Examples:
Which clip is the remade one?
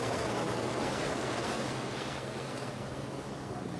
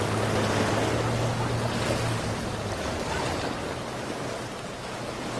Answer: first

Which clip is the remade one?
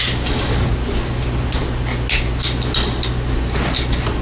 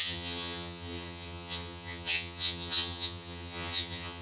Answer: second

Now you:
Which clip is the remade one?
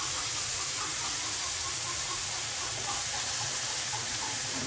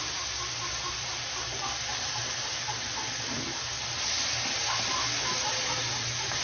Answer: first